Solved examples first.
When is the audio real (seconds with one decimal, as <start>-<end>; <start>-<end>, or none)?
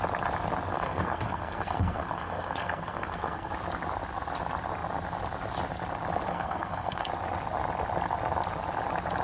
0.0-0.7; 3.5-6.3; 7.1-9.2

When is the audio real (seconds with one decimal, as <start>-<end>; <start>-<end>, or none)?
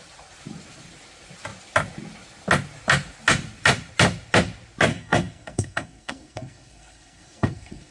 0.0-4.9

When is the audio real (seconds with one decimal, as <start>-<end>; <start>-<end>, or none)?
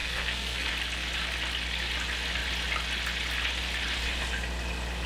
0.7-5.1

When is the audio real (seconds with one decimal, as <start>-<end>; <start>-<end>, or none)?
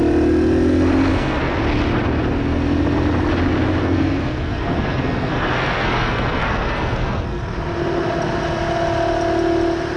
0.0-1.1; 1.6-3.8; 7.4-10.0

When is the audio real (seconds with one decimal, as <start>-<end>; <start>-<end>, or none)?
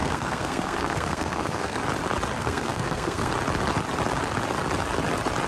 1.8-2.4; 3.3-5.5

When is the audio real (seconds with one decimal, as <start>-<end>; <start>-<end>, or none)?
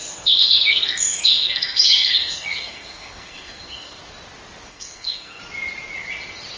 4.0-4.7; 5.4-6.6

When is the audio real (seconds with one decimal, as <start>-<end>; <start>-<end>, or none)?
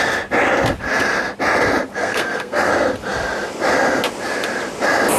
0.0-2.0; 2.7-5.2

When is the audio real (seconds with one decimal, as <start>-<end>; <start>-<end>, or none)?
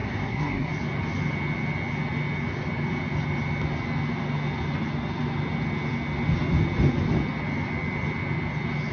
0.7-8.9